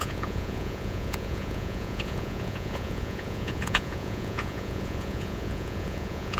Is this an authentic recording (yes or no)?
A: no